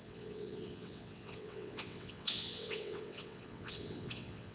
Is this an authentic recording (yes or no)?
no